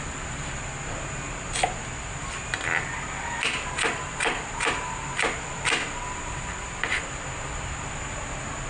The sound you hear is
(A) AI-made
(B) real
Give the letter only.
B